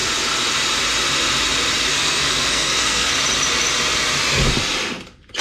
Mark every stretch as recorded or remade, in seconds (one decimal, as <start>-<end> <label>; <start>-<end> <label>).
0.0-1.9 recorded; 1.9-3.1 remade; 3.1-5.4 recorded